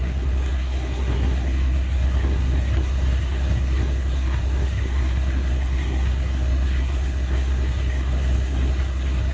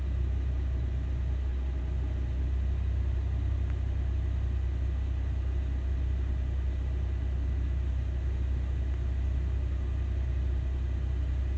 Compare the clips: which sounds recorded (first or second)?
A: second